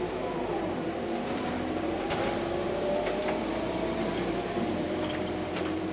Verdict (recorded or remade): remade